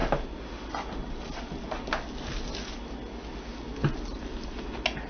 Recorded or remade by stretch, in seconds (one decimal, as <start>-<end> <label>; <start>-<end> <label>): 0.0-5.1 recorded